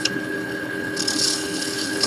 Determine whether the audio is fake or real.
fake